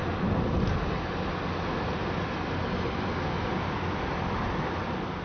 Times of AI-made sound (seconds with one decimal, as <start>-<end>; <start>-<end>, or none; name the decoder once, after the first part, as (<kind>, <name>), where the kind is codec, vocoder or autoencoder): none